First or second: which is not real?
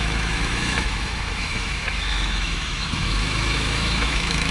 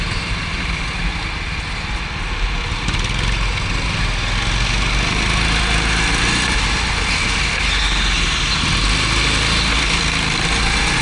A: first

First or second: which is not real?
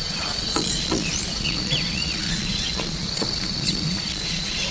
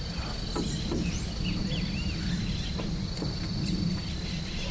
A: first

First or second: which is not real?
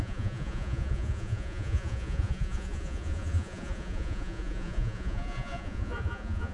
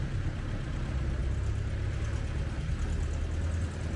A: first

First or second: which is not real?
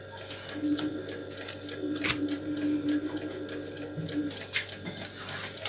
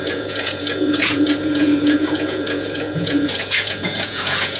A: second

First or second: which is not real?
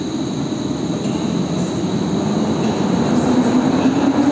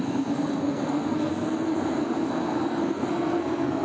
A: second